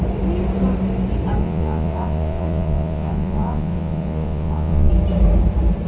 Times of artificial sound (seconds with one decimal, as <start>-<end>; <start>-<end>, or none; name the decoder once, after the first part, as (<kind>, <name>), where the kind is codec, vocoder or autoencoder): 1.4-4.9 (vocoder, Vocos)